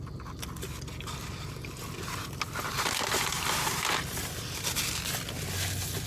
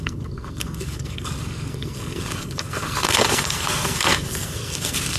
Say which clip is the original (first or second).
first